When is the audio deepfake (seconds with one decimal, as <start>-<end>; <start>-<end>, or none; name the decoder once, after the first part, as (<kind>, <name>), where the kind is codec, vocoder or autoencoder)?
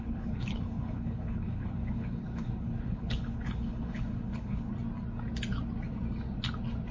0.0-4.7 (codec, HILCodec)